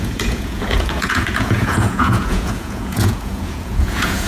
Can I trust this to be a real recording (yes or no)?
no